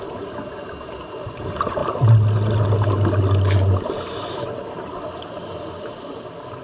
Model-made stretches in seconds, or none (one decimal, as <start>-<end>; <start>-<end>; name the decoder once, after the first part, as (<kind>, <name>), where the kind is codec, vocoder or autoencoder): none